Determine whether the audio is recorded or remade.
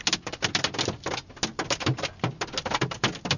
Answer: recorded